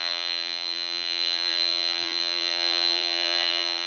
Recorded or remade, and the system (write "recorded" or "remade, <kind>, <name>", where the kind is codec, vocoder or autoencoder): remade, vocoder, BigVGAN v2